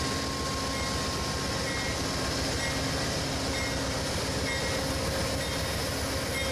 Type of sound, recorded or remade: recorded